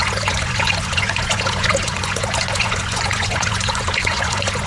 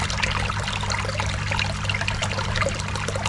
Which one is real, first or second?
second